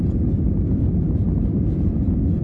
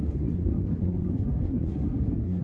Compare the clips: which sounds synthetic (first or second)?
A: second